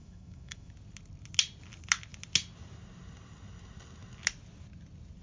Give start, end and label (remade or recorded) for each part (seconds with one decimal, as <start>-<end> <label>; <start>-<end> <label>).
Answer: 0.0-0.7 remade; 0.7-5.2 recorded